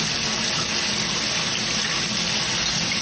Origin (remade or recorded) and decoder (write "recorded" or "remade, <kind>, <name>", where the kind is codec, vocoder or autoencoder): recorded